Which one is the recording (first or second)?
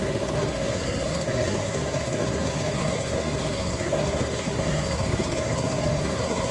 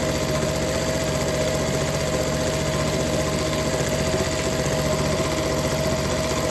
second